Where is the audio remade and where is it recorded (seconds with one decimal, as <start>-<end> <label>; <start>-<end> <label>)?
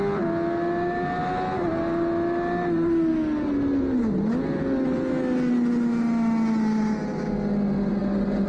0.0-8.5 recorded